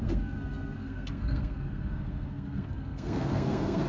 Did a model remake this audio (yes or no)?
yes